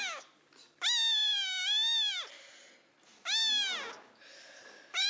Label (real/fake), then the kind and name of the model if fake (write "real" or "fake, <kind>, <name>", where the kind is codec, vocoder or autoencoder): real